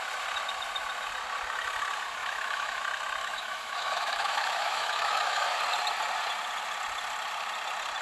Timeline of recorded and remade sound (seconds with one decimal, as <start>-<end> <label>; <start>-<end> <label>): 0.0-2.2 recorded; 2.2-2.8 remade; 2.8-3.2 recorded; 3.2-5.6 remade; 5.6-8.0 recorded